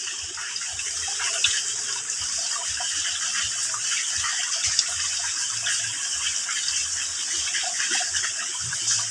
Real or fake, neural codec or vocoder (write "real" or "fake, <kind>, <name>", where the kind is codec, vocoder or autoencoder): real